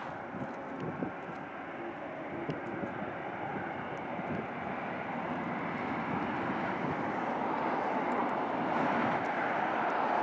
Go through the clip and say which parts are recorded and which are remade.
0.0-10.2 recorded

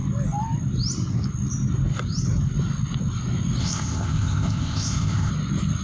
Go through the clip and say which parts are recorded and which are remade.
0.0-3.6 recorded; 3.6-5.3 remade; 5.3-5.8 recorded

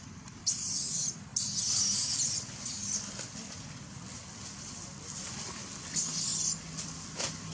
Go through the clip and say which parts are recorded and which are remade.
0.0-7.5 recorded

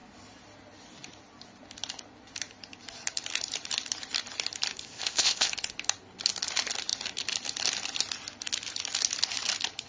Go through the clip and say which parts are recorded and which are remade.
0.0-4.8 recorded; 4.8-5.5 remade; 5.5-9.9 recorded

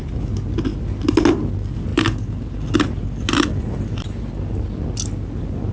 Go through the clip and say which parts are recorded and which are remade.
0.0-5.7 recorded

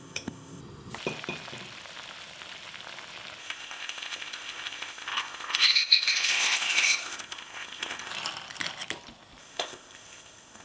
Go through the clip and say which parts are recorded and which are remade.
0.0-0.6 remade; 0.6-3.4 recorded; 3.4-8.1 remade; 8.1-9.4 recorded; 9.4-10.6 remade